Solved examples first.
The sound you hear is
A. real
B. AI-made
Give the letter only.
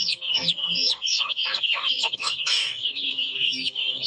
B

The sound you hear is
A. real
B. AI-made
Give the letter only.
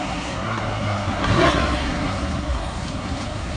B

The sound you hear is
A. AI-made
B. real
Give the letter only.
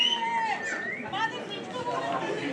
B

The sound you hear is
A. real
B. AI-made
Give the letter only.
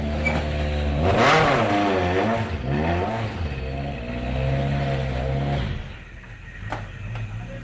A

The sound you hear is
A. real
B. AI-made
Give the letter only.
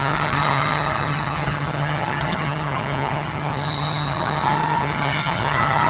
B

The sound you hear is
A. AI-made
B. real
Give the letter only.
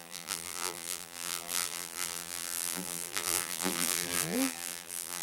A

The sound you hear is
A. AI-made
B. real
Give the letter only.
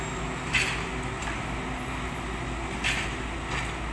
B